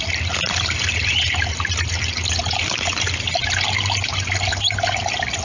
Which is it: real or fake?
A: real